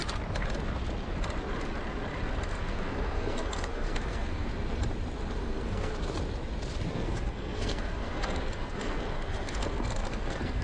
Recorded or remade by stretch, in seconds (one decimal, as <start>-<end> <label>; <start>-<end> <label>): 0.0-2.5 recorded; 2.5-4.5 remade; 4.5-5.4 recorded; 5.4-5.9 remade; 5.9-6.9 recorded; 6.9-10.6 remade